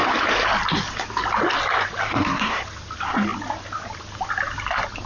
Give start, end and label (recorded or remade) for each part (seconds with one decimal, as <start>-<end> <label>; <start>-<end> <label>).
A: 0.0-2.0 recorded; 2.0-2.6 remade; 2.6-5.1 recorded